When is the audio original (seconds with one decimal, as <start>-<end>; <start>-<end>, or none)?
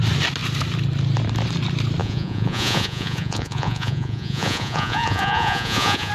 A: 0.0-2.0